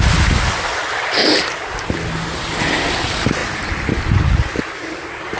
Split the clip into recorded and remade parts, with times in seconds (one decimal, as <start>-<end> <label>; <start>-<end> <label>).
0.0-5.4 recorded